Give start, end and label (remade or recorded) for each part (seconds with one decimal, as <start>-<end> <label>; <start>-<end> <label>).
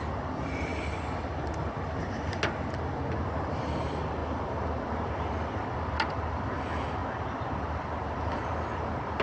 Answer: 0.0-9.2 recorded